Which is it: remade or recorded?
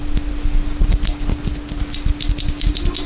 recorded